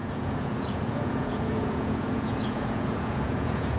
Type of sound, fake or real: fake